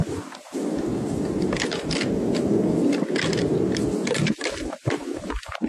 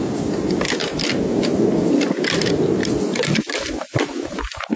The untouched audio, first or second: first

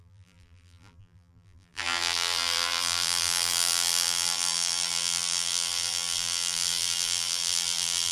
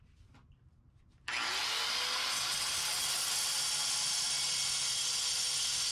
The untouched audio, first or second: second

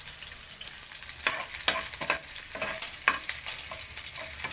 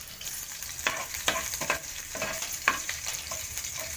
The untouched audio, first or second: first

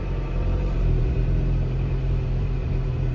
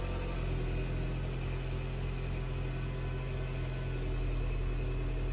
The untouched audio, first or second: second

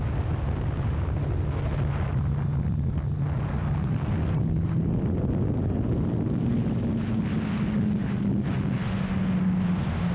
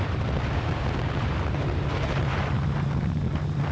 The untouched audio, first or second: first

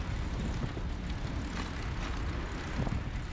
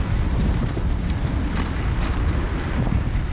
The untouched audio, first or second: first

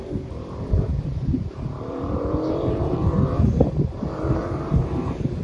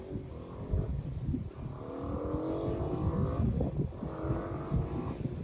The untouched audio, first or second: second